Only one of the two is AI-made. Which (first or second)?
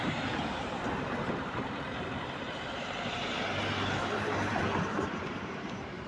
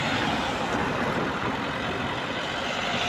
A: first